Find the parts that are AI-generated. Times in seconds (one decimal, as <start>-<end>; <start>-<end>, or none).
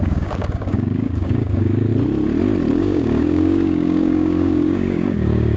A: 0.0-1.9; 2.7-5.6